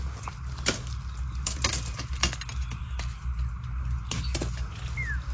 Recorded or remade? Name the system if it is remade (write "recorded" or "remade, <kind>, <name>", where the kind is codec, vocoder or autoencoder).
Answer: recorded